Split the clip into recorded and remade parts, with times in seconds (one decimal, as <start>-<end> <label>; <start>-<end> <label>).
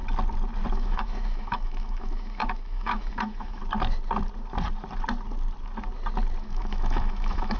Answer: 0.0-0.7 recorded; 0.7-3.6 remade; 3.6-6.4 recorded; 6.4-7.6 remade